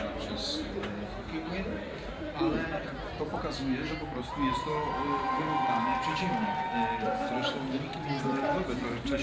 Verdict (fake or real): real